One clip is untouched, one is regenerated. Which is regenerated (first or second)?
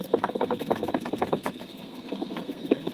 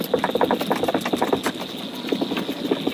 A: first